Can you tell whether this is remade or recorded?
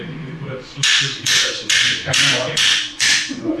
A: remade